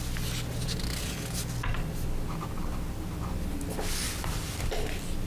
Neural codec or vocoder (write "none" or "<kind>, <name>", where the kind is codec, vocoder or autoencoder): none